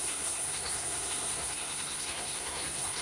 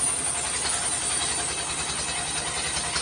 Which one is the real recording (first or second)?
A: second